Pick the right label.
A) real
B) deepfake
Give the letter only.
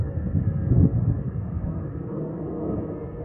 B